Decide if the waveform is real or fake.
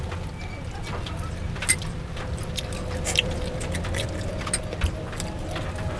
real